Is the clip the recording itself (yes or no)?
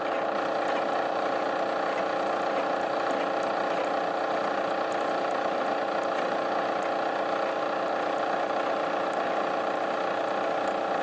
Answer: yes